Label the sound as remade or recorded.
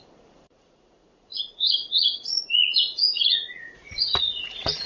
remade